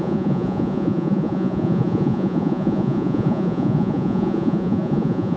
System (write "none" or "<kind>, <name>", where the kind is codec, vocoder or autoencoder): vocoder, Vocos